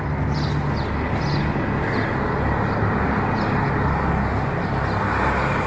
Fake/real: real